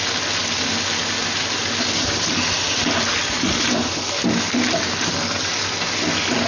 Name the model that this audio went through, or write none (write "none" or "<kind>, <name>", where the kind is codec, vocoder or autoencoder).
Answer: none